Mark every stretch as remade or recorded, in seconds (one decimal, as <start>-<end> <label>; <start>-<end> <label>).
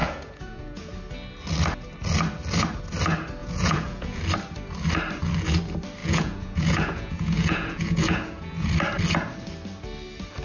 0.0-0.9 remade; 0.9-3.4 recorded; 3.4-4.2 remade; 4.2-6.0 recorded; 6.0-8.7 remade; 8.7-10.4 recorded